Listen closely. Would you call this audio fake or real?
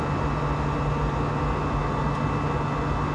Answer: real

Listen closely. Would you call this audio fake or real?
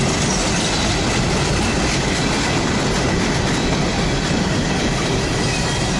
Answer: real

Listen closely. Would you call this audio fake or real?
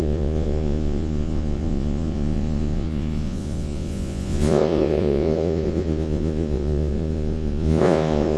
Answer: fake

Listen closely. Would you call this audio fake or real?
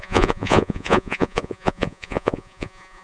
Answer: fake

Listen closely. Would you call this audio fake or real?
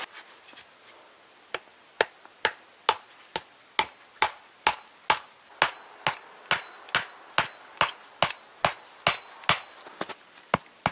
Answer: real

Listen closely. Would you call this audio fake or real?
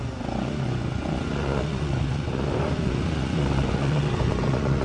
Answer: fake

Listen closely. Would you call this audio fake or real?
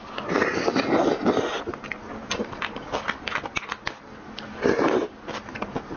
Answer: real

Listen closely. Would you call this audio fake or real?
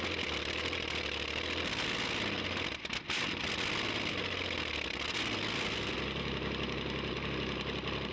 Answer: real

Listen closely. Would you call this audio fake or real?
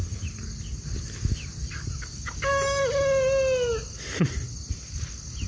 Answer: real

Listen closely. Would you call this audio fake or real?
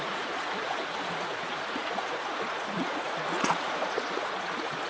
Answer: fake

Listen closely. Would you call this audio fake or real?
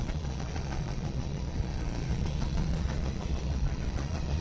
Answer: fake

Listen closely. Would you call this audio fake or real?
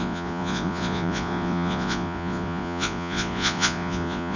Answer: fake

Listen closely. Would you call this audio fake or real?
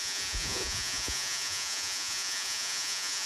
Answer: fake